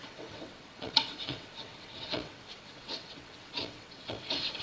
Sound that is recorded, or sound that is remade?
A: remade